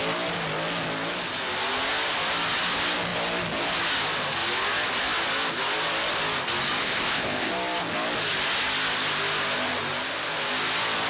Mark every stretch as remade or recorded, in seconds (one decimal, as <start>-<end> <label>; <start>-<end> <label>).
0.0-6.8 recorded; 6.8-7.5 remade; 7.5-11.1 recorded